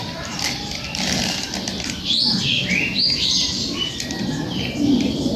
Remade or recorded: recorded